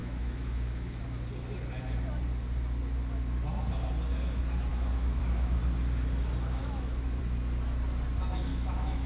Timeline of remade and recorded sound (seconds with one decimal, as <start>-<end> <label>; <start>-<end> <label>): 0.0-1.0 remade; 1.0-4.7 recorded; 4.7-5.2 remade; 5.2-6.6 recorded; 6.6-7.2 remade; 7.2-8.5 recorded; 8.5-9.1 remade